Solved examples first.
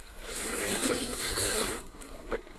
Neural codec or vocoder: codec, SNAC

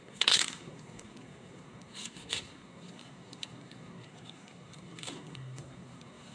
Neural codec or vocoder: codec, SNAC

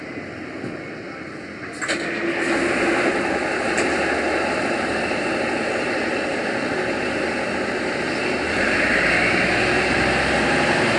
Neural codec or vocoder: none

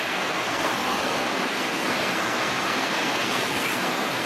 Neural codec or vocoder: codec, SNAC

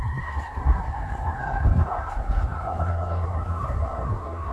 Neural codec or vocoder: codec, SNAC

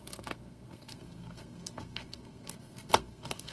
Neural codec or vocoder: codec, SNAC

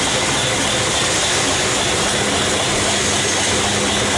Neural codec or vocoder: none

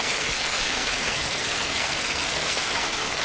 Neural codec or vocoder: codec, SNAC